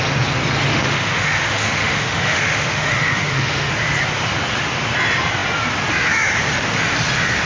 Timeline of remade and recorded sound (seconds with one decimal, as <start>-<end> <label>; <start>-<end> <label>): 0.0-0.7 recorded; 0.7-3.7 remade; 3.7-7.5 recorded